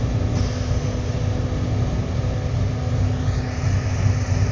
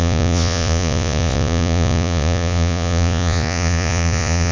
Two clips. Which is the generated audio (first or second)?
second